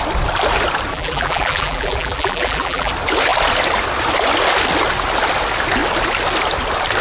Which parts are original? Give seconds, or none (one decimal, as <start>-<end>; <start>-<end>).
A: 0.0-0.9; 2.9-7.0